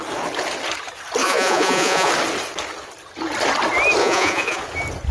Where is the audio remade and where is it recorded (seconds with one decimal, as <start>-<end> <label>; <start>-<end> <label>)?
0.0-1.2 recorded; 1.2-2.1 remade; 2.1-4.0 recorded; 4.0-4.6 remade; 4.6-5.1 recorded